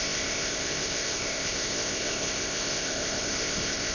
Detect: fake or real fake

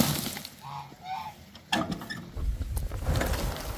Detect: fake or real real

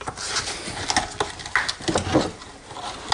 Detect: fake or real real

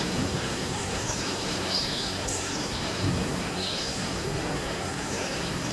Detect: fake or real fake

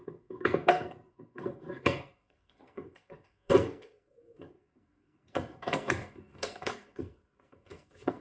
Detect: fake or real fake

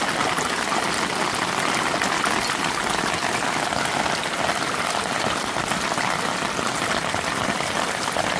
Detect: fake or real real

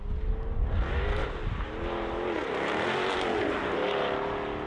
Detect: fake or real real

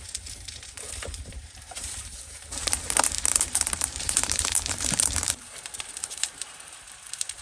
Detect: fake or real fake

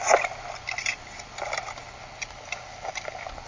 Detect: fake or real real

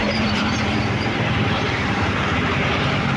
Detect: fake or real fake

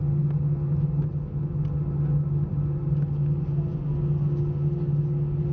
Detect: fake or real real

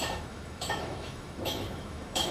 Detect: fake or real fake